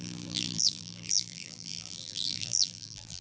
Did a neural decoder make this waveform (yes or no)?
yes